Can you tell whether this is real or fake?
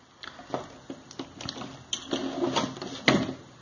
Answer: real